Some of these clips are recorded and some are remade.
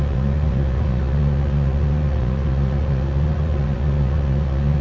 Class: remade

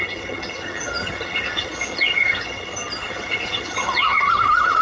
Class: remade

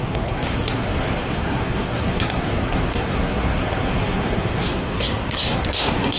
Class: remade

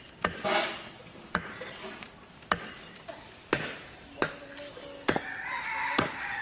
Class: remade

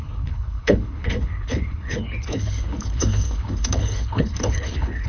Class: remade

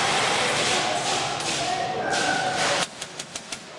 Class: recorded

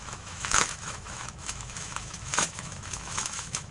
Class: remade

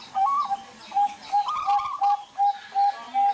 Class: recorded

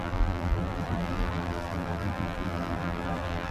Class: remade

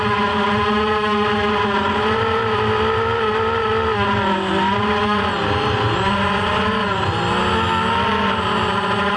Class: recorded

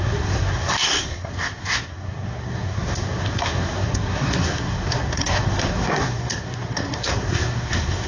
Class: remade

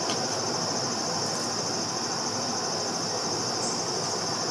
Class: recorded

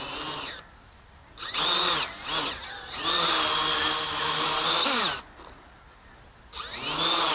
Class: recorded